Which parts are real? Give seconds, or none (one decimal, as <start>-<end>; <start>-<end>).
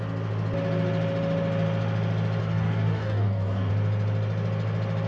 0.0-2.4; 3.7-5.1